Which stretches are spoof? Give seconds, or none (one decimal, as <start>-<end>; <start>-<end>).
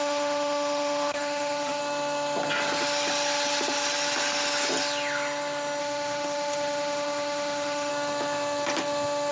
0.0-1.8; 5.8-7.9